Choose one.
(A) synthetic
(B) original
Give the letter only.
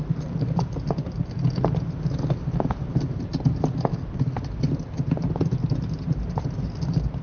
B